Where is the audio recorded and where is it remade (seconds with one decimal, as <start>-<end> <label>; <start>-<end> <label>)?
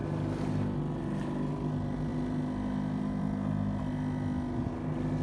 0.0-5.2 recorded